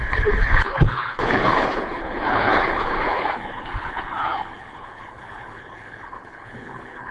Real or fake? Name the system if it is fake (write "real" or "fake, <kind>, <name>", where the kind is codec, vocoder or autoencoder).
fake, codec, HILCodec